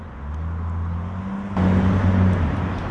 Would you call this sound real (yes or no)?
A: yes